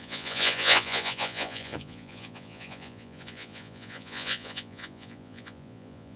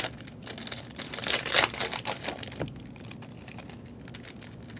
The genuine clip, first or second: second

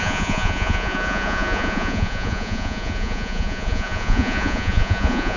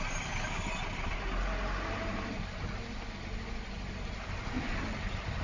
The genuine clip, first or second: second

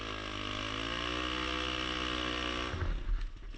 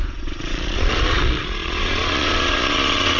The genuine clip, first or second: first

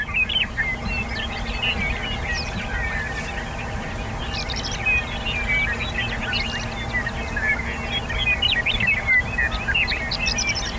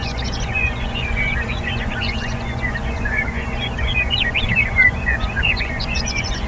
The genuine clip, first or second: first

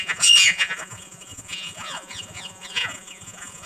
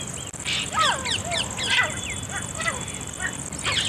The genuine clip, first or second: second